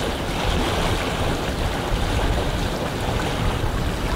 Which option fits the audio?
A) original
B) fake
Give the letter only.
A